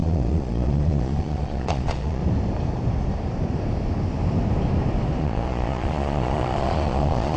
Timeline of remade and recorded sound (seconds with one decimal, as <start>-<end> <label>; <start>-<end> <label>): 0.0-2.2 remade; 2.2-5.2 recorded; 5.2-7.4 remade